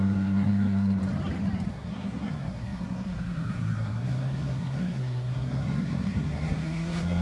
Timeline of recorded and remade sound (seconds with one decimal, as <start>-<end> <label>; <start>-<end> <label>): 0.0-1.0 remade; 1.0-1.7 recorded; 1.7-7.2 remade